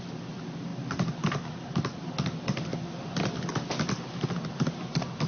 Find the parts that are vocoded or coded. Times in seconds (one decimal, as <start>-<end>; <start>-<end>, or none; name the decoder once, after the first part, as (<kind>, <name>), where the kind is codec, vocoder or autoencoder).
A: 0.7-2.1 (vocoder, BigVGAN v2); 2.7-4.0